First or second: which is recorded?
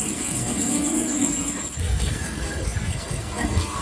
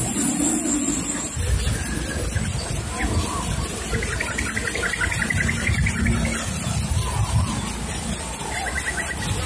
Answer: second